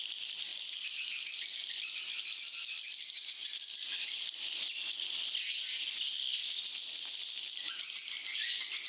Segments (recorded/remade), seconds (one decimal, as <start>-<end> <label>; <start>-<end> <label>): 0.0-8.9 recorded